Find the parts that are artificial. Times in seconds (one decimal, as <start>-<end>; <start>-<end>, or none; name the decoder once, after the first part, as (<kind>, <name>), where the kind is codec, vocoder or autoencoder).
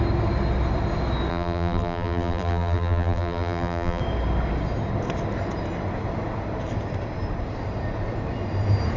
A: 1.3-4.0 (vocoder, BigVGAN v2)